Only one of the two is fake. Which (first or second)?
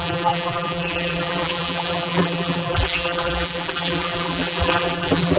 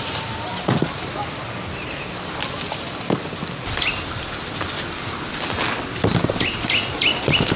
first